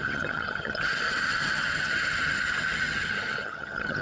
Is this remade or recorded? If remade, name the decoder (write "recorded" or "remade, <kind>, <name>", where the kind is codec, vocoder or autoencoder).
remade, vocoder, HiFi-GAN